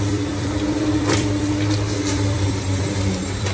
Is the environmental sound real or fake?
fake